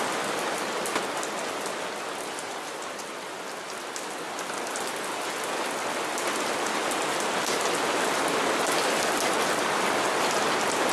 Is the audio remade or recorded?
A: recorded